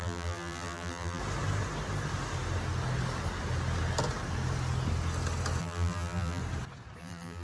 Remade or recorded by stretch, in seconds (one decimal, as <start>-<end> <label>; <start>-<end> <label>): 0.0-1.2 remade; 1.2-5.6 recorded; 5.6-6.4 remade; 6.4-7.0 recorded; 7.0-7.4 remade

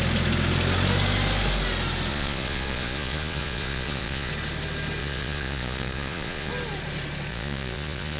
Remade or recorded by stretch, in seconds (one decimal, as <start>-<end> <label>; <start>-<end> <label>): 0.0-2.1 recorded; 2.1-4.3 remade; 4.3-5.0 recorded; 5.0-6.5 remade; 6.5-7.3 recorded; 7.3-8.2 remade

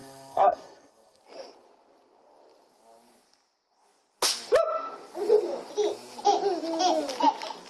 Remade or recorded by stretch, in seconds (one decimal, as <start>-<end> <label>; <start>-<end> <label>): 0.0-1.2 remade; 1.2-7.7 recorded

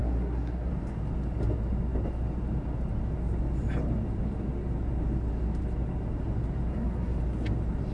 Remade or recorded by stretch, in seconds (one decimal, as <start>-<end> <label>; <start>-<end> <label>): 0.0-0.7 remade; 0.7-6.7 recorded; 6.7-7.2 remade; 7.2-7.9 recorded

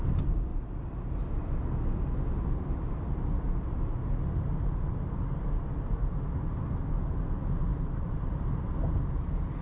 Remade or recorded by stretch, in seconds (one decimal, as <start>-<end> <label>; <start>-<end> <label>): 0.0-0.5 recorded; 0.5-4.2 remade; 4.2-7.7 recorded; 7.7-8.7 remade; 8.7-9.6 recorded

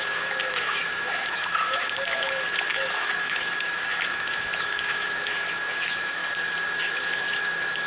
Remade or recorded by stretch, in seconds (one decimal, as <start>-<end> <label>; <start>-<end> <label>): 0.0-6.2 remade; 6.2-6.8 recorded; 6.8-7.9 remade

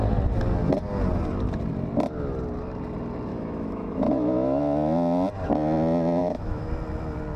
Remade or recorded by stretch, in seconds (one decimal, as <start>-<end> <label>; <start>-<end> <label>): 0.0-3.3 recorded; 3.3-4.6 remade; 4.6-6.2 recorded; 6.2-6.7 remade; 6.7-7.4 recorded

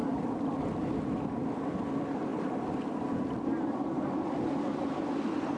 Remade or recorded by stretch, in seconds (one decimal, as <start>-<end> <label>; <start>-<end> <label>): 0.0-1.3 remade; 1.3-2.3 recorded; 2.3-2.8 remade; 2.8-5.6 recorded